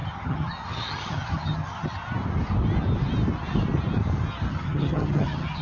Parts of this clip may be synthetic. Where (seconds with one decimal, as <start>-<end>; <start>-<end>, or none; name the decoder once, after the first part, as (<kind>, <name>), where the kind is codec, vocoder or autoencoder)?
0.0-2.0 (vocoder, HiFi-GAN); 4.5-5.6